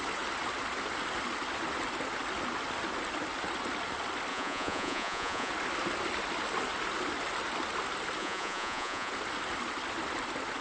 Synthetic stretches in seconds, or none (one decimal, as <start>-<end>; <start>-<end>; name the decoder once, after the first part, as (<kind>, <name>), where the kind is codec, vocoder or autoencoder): 4.3-5.5 (vocoder, Vocos); 8.2-9.1